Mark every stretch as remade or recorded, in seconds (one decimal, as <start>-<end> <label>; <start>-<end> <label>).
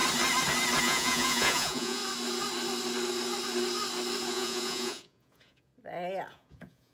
0.0-0.8 recorded; 0.8-2.0 remade; 2.0-4.3 recorded; 4.3-5.7 remade; 5.7-6.3 recorded; 6.3-6.9 remade